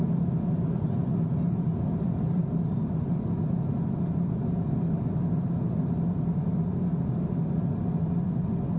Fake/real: real